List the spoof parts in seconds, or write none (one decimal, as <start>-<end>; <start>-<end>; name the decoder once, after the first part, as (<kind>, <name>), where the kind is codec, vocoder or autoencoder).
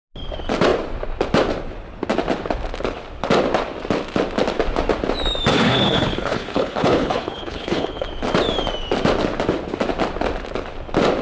5.5-8.1 (codec, HILCodec)